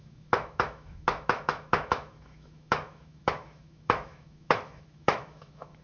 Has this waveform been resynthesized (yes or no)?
yes